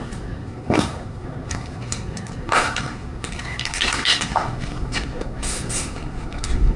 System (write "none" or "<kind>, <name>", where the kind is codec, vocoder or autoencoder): codec, SNAC